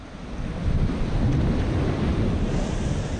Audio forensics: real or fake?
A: real